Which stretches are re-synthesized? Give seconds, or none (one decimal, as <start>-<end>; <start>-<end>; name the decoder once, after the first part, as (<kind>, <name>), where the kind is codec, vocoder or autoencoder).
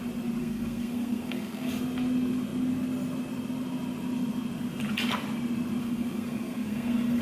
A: 0.4-1.7 (codec, SNAC); 5.8-7.2